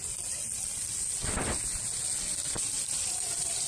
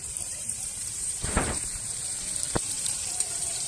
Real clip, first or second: first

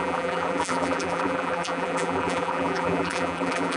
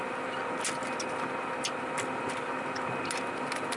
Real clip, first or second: second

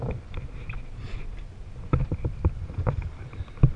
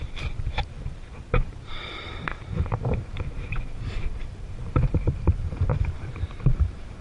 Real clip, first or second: first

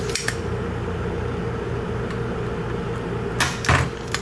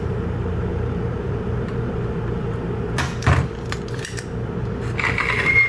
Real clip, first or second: first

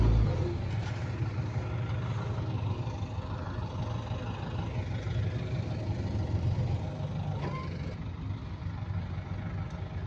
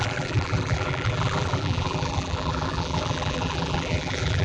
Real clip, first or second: first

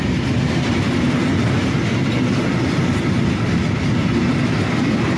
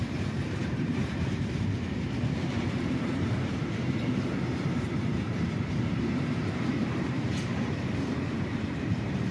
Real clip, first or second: first